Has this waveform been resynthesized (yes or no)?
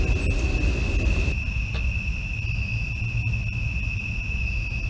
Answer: no